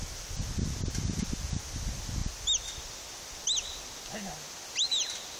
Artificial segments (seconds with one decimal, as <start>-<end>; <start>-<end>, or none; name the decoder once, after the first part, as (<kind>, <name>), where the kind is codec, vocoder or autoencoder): none

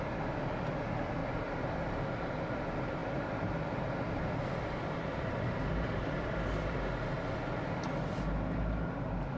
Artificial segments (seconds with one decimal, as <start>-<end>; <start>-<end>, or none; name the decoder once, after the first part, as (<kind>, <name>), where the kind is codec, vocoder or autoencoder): 1.2-2.1 (vocoder, BigVGAN v2); 5.7-6.7

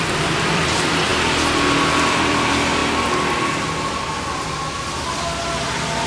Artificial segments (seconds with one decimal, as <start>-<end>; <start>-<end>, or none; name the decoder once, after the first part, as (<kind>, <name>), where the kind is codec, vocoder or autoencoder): 0.0-1.1 (vocoder, BigVGAN v2); 1.9-2.8

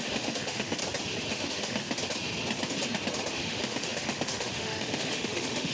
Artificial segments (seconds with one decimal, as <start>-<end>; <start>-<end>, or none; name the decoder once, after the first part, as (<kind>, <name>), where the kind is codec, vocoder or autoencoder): 0.0-0.8 (autoencoder, DAC-VAE); 1.3-1.8; 3.3-5.7

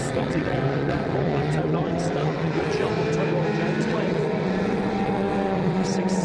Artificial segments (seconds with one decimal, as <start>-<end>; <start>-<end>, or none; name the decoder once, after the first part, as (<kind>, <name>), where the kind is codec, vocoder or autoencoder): 0.0-2.9 (vocoder, WaveNeXt); 3.8-6.2

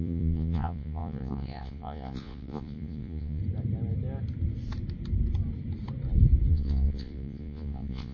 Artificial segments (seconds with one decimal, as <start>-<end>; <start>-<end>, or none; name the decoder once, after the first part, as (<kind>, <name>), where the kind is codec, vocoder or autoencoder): 0.0-3.4 (vocoder, Vocos); 6.5-8.1